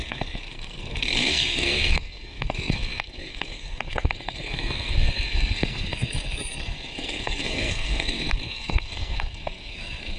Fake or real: fake